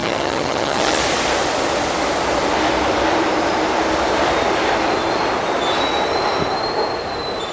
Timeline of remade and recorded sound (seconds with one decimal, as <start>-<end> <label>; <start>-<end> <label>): 0.0-1.0 remade; 1.0-7.5 recorded

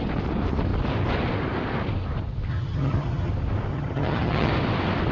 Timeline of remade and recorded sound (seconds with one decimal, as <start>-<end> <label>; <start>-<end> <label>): 0.0-2.5 recorded; 2.5-3.3 remade; 3.3-3.7 recorded; 3.7-4.5 remade; 4.5-5.1 recorded

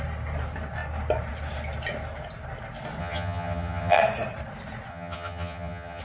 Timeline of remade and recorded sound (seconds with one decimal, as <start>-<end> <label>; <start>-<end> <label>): 0.0-3.0 recorded; 3.0-4.0 remade; 4.0-4.9 recorded; 4.9-6.0 remade

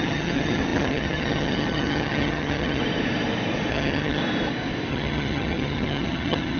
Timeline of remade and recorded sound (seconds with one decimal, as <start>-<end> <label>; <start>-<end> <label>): 0.0-2.8 remade; 2.8-3.7 recorded; 3.7-4.2 remade; 4.2-4.9 recorded; 4.9-6.6 remade

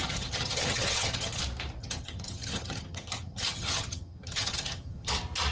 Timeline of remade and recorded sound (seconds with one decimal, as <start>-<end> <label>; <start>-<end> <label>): 0.0-1.4 remade; 1.4-1.8 recorded; 1.8-5.1 remade; 5.1-5.5 recorded

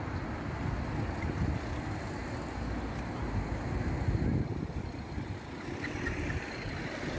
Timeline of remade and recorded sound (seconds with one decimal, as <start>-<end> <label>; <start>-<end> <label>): 0.0-7.2 recorded

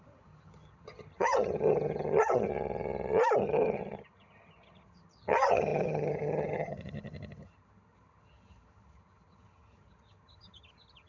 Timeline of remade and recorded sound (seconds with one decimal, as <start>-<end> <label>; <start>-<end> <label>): 0.0-2.5 remade; 2.5-3.4 recorded; 3.4-11.1 remade